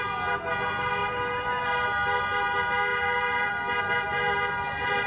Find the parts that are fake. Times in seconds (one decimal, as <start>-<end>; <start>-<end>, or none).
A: 1.0-1.6; 2.9-5.1